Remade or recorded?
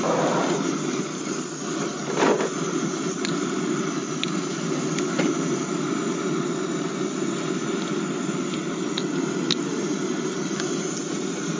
recorded